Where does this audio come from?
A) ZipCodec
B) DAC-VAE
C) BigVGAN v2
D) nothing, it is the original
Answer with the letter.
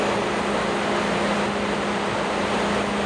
D